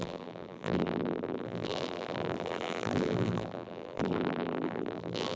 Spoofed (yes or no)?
yes